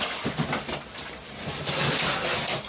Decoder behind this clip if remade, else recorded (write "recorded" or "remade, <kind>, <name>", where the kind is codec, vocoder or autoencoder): recorded